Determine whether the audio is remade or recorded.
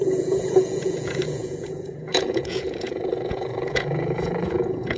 remade